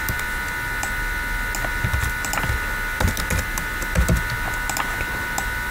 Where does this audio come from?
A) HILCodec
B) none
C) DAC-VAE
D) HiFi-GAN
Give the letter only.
B